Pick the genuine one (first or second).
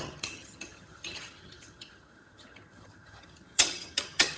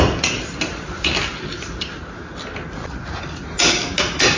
second